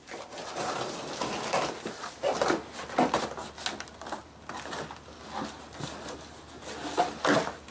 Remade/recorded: recorded